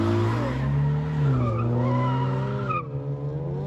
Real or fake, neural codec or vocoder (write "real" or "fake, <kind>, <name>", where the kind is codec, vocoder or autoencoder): real